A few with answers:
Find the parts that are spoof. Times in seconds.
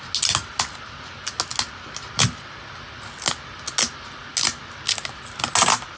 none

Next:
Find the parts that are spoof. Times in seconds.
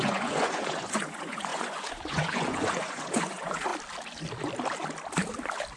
0.0-3.7 (vocoder, Vocos)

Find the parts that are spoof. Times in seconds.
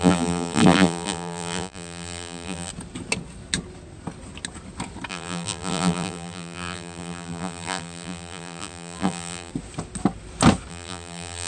0.0-2.7 (vocoder, BigVGAN v2); 5.1-9.5; 10.7-11.5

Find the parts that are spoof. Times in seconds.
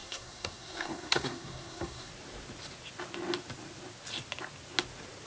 0.0-2.1 (codec, SNAC)